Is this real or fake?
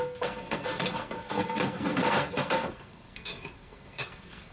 fake